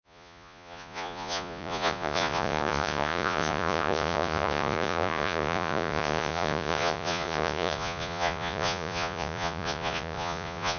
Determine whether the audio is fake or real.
fake